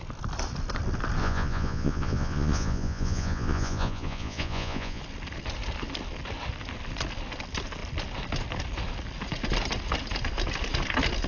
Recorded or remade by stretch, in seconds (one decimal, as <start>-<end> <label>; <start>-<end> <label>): 0.0-1.2 recorded; 1.2-5.0 remade; 5.0-11.3 recorded